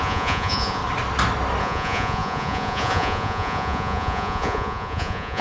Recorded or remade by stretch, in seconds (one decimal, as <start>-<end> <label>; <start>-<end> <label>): 0.0-0.8 remade; 0.8-1.6 recorded; 1.6-5.4 remade